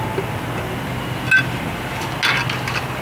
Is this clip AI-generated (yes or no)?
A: no